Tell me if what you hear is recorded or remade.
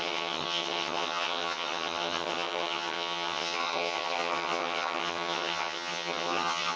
remade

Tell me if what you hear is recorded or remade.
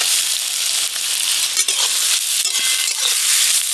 recorded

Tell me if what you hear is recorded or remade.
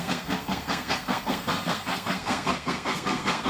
remade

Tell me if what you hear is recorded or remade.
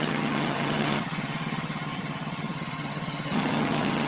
remade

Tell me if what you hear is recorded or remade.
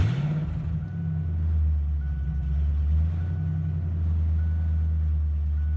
recorded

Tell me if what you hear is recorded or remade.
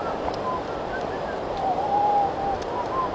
recorded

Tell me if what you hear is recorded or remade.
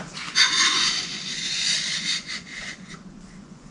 remade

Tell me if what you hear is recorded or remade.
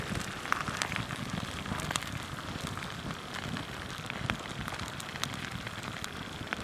recorded